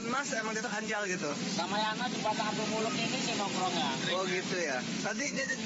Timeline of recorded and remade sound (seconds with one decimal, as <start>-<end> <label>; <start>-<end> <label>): 0.0-0.6 recorded; 0.6-1.4 remade; 1.4-4.8 recorded; 4.8-5.7 remade

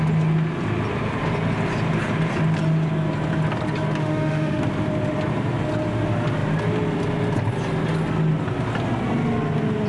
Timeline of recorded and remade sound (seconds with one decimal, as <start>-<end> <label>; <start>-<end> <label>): 0.0-4.0 recorded; 4.0-4.6 remade; 4.6-9.9 recorded

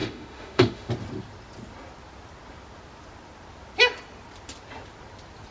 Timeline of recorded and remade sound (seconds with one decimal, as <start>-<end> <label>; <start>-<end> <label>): 0.0-0.9 remade; 0.9-5.5 recorded

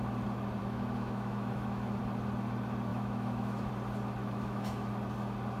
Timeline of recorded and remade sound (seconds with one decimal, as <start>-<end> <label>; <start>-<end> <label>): 0.0-0.6 recorded; 0.6-2.0 remade; 2.0-2.9 recorded; 2.9-3.7 remade; 3.7-4.2 recorded; 4.2-4.9 remade; 4.9-5.6 recorded

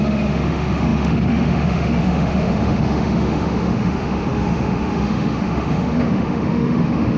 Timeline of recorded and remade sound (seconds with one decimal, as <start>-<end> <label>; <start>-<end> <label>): 0.0-7.2 remade

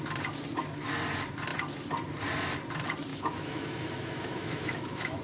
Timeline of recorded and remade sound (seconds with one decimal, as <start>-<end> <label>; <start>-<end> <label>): 0.0-3.1 recorded; 3.1-5.2 remade

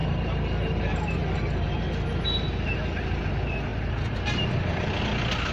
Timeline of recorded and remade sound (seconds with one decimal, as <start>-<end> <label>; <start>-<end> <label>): 0.0-5.5 recorded

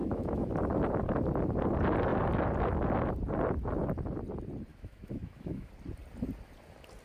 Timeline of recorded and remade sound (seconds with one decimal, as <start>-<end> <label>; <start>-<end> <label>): 0.0-0.5 remade; 0.5-4.7 recorded; 4.7-5.7 remade; 5.7-7.0 recorded